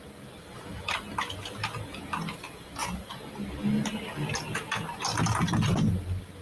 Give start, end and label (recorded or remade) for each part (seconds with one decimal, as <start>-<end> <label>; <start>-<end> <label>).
0.0-6.4 recorded